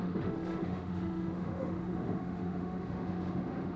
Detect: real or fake fake